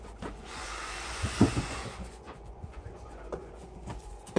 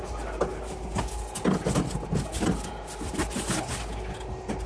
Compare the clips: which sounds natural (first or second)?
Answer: second